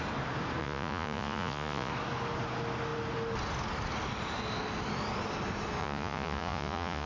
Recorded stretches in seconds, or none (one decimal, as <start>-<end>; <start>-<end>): 0.0-0.6; 1.9-5.8